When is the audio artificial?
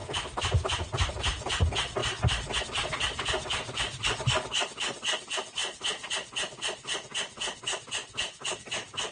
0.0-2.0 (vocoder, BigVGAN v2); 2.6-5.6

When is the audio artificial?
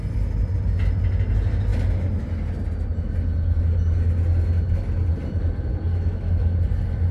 5.9-6.6 (autoencoder, DAC-VAE)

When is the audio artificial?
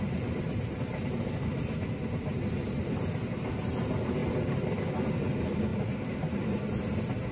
none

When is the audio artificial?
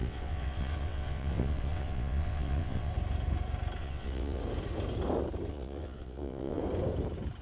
0.0-2.9 (vocoder, WaveNeXt); 3.8-4.4; 5.5-6.6